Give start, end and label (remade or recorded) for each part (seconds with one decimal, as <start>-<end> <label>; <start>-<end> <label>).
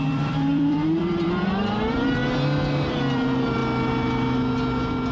0.0-2.2 remade; 2.2-2.9 recorded; 2.9-3.6 remade; 3.6-5.1 recorded